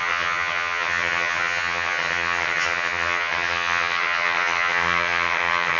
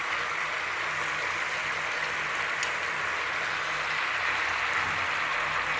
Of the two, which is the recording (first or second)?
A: second